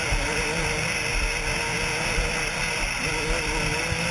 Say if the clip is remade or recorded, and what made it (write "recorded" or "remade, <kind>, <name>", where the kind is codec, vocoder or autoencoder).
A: recorded